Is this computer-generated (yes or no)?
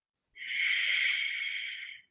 no